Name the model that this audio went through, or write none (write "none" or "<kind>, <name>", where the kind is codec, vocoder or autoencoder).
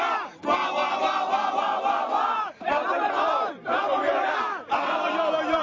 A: vocoder, BigVGAN v2